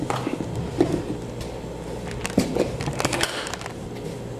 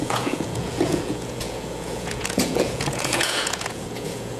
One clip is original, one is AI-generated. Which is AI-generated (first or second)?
second